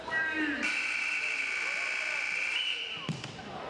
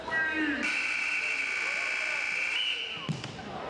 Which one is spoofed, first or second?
first